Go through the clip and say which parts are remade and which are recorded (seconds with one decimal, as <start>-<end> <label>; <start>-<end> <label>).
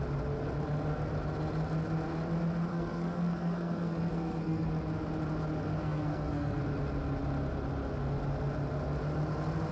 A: 0.0-2.7 recorded; 2.7-4.7 remade; 4.7-5.8 recorded; 5.8-6.6 remade; 6.6-9.7 recorded